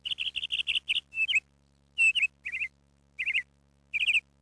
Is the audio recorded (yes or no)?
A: yes